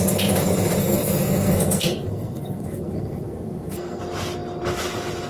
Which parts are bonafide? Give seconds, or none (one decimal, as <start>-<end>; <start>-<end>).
0.0-0.8; 4.0-5.3